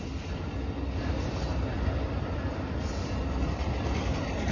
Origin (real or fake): real